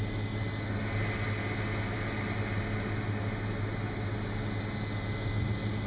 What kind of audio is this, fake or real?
real